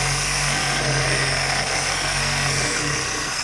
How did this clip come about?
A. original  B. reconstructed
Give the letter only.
B